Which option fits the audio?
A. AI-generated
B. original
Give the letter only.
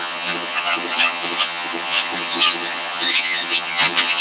A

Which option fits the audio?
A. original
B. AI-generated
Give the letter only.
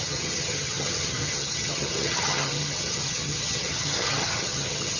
B